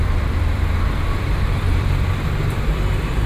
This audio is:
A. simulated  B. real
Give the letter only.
A